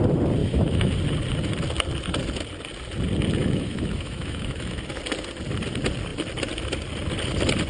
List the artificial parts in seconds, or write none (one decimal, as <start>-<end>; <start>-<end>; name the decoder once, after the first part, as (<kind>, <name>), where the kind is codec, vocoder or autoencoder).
0.4-0.9 (autoencoder, DAC-VAE); 3.4-5.0